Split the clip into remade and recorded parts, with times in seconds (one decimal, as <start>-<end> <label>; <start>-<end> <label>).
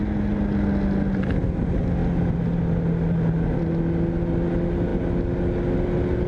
0.0-6.3 recorded